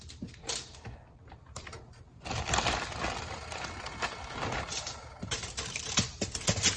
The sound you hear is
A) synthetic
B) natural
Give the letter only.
B